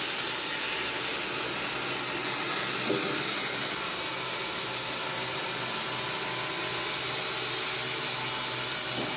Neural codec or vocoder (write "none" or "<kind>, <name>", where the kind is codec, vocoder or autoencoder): none